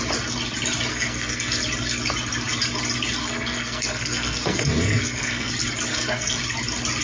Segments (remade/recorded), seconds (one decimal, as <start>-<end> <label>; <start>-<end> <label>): 0.0-0.9 recorded; 0.9-1.6 remade; 1.6-3.2 recorded; 3.2-5.5 remade; 5.5-5.9 recorded; 5.9-6.4 remade; 6.4-7.0 recorded